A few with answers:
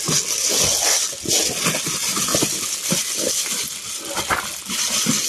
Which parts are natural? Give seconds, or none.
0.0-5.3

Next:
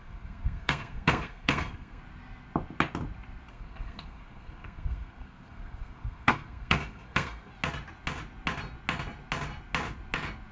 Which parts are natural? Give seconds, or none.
2.0-3.5; 7.5-10.5

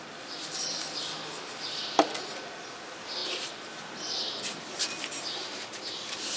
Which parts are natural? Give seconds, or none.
0.0-6.4